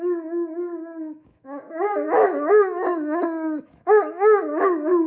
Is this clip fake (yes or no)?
yes